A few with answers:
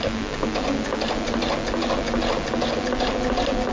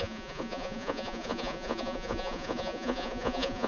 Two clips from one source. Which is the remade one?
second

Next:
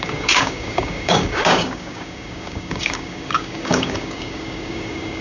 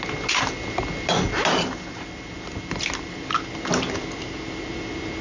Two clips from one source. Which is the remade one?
first